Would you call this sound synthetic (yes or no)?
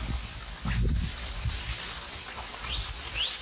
no